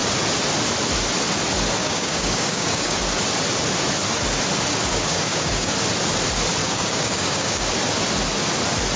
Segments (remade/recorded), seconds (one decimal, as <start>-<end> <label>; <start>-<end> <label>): 0.0-1.8 recorded; 1.8-3.0 remade; 3.0-4.9 recorded; 4.9-5.7 remade; 5.7-6.6 recorded; 6.6-7.7 remade; 7.7-9.0 recorded